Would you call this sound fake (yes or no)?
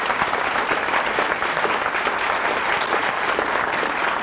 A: yes